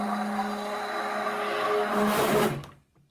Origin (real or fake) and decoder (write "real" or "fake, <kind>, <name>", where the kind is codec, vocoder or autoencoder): real